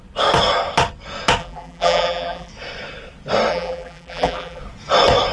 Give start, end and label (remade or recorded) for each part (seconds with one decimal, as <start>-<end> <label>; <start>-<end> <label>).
0.0-1.4 recorded; 1.4-2.5 remade; 2.5-3.5 recorded; 3.5-4.6 remade; 4.6-5.3 recorded